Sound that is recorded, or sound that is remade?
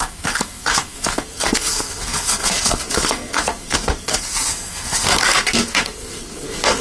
remade